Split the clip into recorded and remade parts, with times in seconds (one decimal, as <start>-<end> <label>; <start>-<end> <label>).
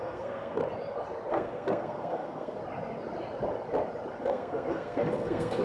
0.0-0.6 remade; 0.6-1.3 recorded; 1.3-2.6 remade; 2.6-4.2 recorded; 4.2-5.6 remade